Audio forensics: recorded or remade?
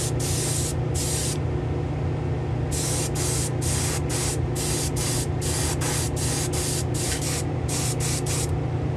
recorded